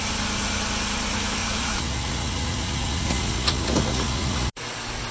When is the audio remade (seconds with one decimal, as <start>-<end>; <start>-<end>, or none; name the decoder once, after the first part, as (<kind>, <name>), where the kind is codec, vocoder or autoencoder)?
1.4-4.5 (vocoder, Vocos)